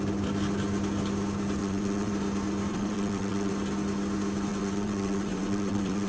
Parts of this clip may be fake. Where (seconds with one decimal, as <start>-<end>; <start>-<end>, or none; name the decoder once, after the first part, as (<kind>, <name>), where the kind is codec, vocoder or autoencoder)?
1.6-2.1 (vocoder, WaveNeXt); 2.7-3.5; 4.5-6.1